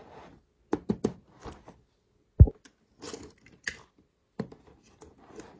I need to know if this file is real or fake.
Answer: real